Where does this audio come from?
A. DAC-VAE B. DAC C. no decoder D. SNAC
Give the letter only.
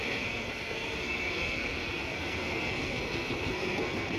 D